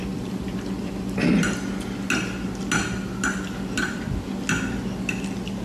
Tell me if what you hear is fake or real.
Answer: real